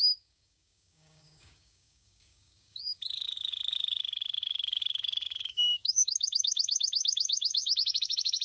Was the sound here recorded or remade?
remade